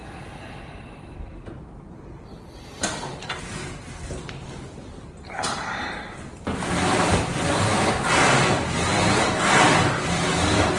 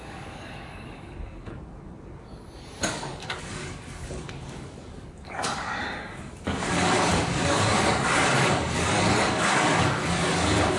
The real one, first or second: first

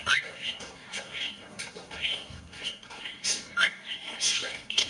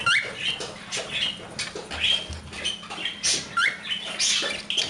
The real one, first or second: second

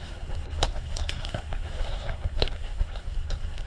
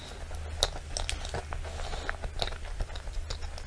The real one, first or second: second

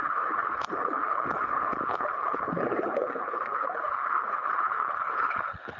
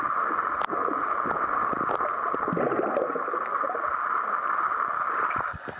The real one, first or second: second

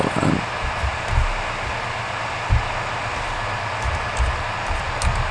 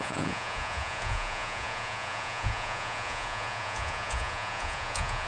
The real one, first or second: first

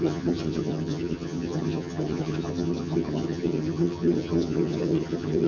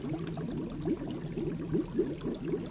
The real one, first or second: second